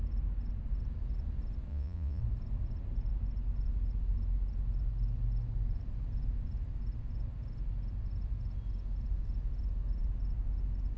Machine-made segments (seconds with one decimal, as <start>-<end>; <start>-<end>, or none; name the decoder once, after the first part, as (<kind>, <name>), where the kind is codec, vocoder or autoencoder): 1.7-2.2 (vocoder, Vocos)